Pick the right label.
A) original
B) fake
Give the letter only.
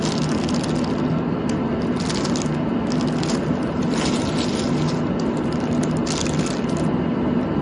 A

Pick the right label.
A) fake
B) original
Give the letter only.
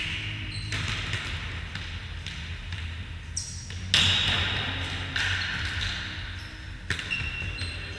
B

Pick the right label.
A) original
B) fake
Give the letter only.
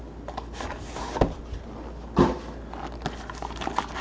A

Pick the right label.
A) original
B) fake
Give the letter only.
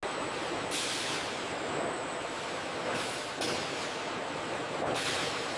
A